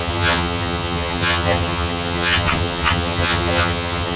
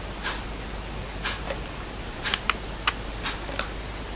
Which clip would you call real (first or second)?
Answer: second